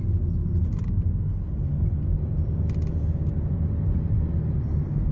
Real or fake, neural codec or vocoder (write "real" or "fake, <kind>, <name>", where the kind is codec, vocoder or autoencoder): real